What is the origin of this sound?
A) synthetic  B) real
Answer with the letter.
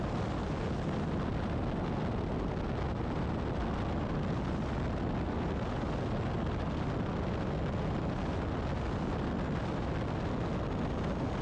B